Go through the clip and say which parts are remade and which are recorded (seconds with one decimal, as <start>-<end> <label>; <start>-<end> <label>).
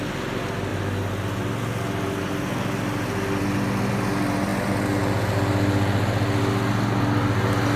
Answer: 0.0-7.8 recorded